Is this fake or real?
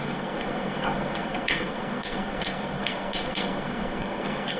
fake